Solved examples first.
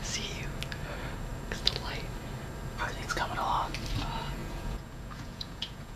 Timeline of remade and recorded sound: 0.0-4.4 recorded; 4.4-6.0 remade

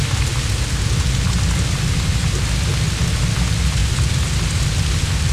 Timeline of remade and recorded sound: 0.0-5.3 recorded

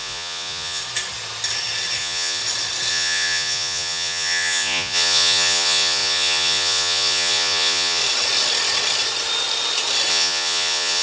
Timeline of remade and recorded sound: 0.0-0.8 remade; 0.8-2.0 recorded; 2.0-2.4 remade; 2.4-2.9 recorded; 2.9-8.0 remade; 8.0-10.1 recorded; 10.1-11.0 remade